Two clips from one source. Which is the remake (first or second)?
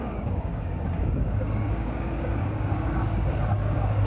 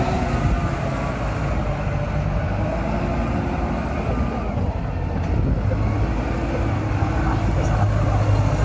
first